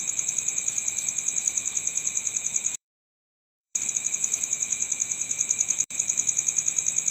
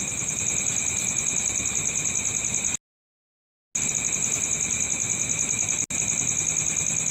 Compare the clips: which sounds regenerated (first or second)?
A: first